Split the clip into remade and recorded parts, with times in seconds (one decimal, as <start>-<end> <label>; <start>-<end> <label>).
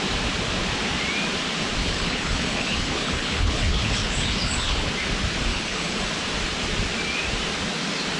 0.0-1.8 recorded; 1.8-4.9 remade; 4.9-5.5 recorded; 5.5-6.1 remade; 6.1-8.2 recorded